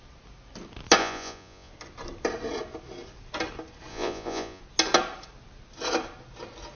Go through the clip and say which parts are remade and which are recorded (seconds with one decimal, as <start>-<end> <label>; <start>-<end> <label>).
0.0-1.0 recorded; 1.0-1.7 remade; 1.7-3.9 recorded; 3.9-4.6 remade; 4.6-6.8 recorded